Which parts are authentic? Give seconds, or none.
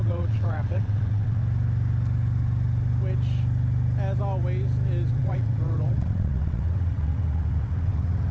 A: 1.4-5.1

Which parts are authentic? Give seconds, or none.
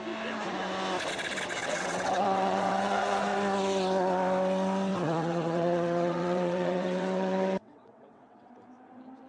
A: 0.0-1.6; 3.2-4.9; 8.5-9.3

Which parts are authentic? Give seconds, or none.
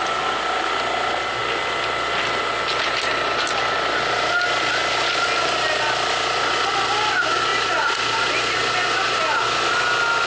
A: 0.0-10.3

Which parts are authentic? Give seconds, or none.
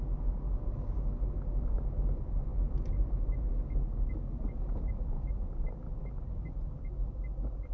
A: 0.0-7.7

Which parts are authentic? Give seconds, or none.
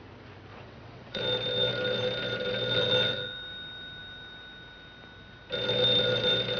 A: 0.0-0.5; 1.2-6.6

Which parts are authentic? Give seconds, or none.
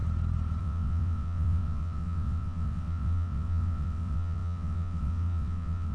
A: 0.0-0.6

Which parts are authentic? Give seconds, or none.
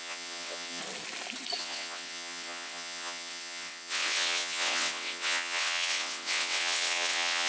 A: 0.8-1.6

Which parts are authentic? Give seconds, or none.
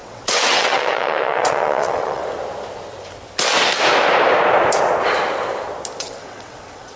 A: 2.2-6.0